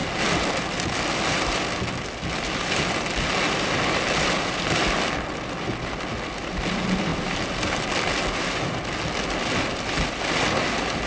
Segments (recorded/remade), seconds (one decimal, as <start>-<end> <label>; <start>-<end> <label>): 0.0-11.1 recorded